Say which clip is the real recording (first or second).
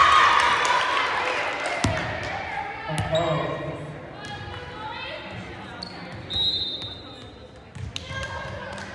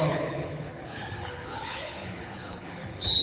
first